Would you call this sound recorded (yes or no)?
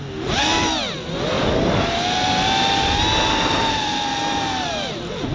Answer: yes